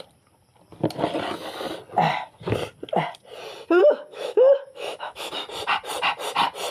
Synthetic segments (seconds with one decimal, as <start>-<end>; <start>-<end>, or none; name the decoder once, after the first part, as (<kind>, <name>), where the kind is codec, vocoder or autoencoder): 3.8-5.3 (autoencoder, DAC-VAE)